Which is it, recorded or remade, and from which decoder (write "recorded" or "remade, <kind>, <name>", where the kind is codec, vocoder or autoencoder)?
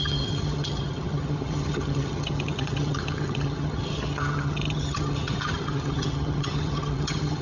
remade, vocoder, HiFi-GAN